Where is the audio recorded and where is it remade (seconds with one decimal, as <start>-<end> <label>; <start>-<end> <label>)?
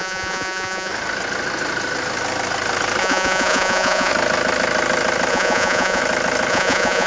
0.0-0.9 remade; 0.9-3.0 recorded; 3.0-4.1 remade; 4.1-5.3 recorded; 5.3-6.0 remade; 6.0-6.5 recorded; 6.5-7.1 remade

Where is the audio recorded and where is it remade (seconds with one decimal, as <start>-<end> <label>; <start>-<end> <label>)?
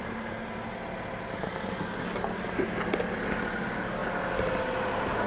0.0-5.3 recorded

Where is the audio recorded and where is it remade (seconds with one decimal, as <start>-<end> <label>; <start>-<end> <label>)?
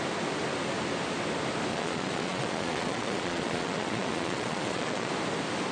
0.0-1.7 recorded; 1.7-5.1 remade; 5.1-5.7 recorded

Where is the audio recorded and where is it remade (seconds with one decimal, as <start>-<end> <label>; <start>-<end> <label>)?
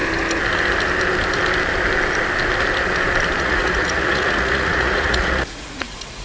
0.0-3.4 recorded; 3.4-6.2 remade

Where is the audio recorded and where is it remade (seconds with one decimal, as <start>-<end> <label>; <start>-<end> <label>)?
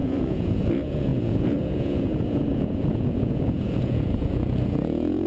0.0-5.3 remade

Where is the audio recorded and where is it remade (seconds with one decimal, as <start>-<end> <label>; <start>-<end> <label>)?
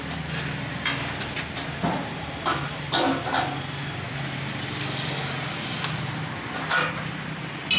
0.0-7.8 recorded